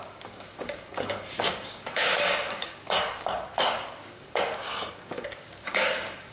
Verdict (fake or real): fake